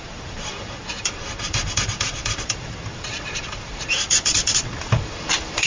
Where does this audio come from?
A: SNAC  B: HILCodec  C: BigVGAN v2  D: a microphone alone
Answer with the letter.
C